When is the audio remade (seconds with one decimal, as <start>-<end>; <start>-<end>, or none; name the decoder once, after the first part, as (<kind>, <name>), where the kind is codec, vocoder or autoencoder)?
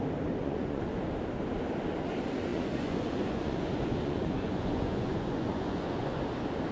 0.4-1.0 (vocoder, Vocos); 2.5-6.2